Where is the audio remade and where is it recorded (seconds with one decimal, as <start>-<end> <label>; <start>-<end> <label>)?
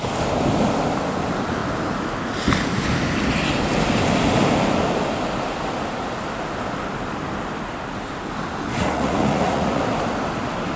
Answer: 0.0-8.8 recorded; 8.8-9.8 remade; 9.8-10.8 recorded